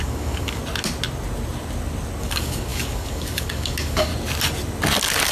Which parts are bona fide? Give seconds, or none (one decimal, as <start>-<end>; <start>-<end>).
0.6-2.2; 4.1-5.3